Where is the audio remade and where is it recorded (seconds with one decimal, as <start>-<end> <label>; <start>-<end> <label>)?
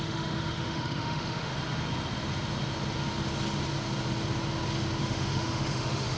0.0-1.5 remade; 1.5-5.0 recorded; 5.0-6.2 remade